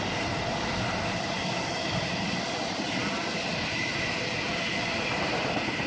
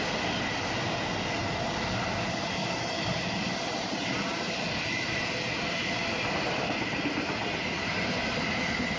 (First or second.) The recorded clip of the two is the second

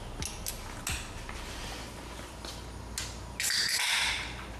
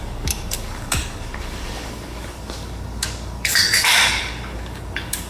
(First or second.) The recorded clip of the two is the first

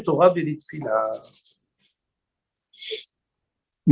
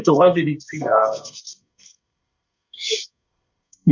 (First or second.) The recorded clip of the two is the first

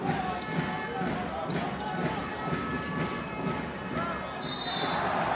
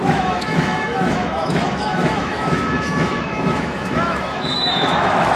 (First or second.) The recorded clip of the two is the first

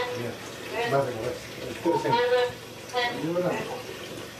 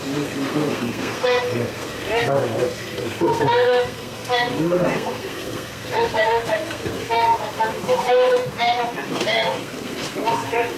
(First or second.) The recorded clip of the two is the first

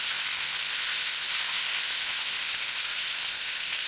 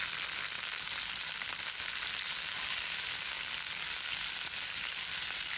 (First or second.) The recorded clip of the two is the second